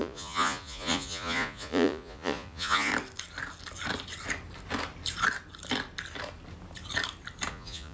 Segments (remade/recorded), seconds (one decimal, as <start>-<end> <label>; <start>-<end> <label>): 0.0-2.9 remade; 2.9-7.5 recorded; 7.5-7.9 remade